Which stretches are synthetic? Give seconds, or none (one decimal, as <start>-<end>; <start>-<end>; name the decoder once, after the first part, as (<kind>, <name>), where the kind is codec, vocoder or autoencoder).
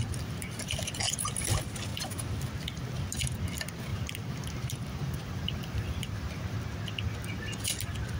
3.9-6.6 (vocoder, BigVGAN v2)